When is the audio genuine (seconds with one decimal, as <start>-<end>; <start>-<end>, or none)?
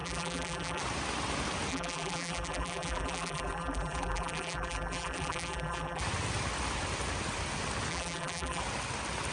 0.8-1.7; 6.0-7.9; 8.6-9.3